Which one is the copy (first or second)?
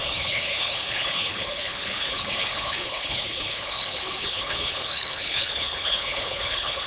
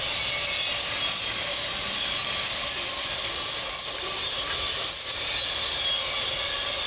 first